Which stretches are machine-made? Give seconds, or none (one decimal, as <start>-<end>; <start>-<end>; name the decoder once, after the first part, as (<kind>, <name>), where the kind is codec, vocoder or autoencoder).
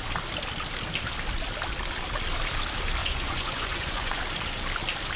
3.0-4.2 (vocoder, Vocos)